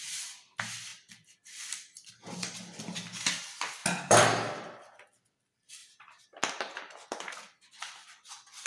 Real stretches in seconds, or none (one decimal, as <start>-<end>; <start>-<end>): 0.9-2.1; 5.8-7.8